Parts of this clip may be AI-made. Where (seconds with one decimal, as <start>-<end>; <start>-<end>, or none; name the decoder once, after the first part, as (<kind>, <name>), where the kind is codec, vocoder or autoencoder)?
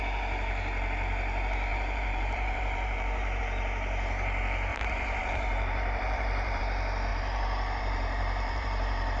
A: 1.7-3.4 (vocoder, BigVGAN v2); 4.7-6.6; 7.1-9.2